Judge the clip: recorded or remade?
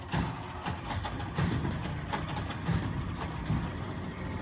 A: recorded